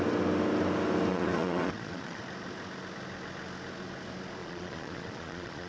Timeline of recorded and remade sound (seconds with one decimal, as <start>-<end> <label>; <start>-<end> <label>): 0.0-1.1 recorded; 1.1-2.2 remade; 2.2-4.4 recorded; 4.4-5.7 remade